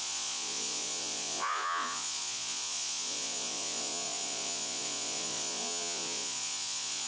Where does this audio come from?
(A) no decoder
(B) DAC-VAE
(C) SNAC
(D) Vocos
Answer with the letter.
D